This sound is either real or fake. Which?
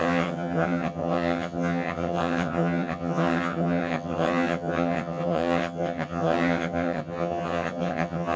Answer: fake